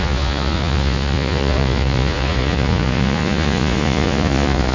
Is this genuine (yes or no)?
no